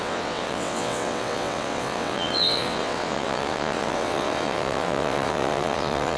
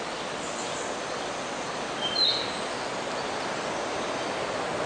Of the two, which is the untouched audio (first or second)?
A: second